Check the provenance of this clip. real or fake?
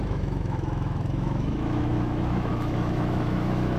fake